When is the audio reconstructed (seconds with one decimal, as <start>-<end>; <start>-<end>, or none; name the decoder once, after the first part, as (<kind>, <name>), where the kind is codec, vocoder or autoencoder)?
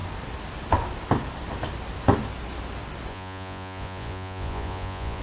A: 3.1-5.2 (vocoder, Vocos)